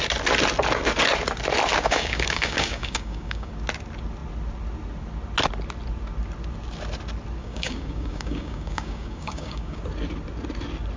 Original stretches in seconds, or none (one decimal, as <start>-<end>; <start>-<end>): 0.0-1.8; 3.5-7.4; 9.8-11.0